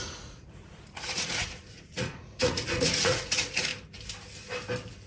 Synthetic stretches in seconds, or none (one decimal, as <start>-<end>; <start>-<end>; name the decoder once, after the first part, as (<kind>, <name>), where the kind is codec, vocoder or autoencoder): 0.0-3.7 (vocoder, Vocos)